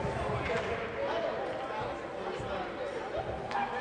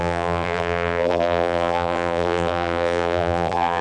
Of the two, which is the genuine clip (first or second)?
first